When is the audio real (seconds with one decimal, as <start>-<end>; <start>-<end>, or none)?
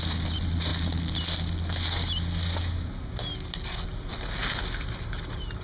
0.0-5.6